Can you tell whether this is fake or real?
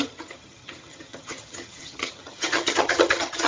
fake